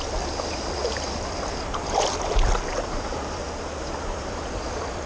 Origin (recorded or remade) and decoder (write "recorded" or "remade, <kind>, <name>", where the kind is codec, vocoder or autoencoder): recorded